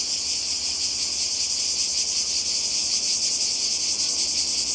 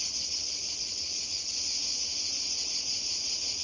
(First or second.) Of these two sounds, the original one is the first